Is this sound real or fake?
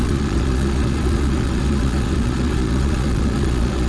fake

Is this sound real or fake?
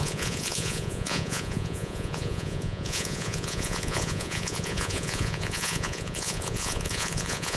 fake